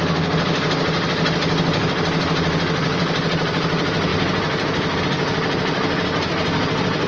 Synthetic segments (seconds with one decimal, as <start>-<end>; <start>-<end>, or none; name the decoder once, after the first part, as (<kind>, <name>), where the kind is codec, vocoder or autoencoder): none